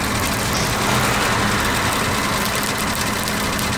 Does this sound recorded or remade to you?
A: recorded